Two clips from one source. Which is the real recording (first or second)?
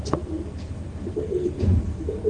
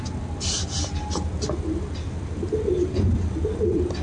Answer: second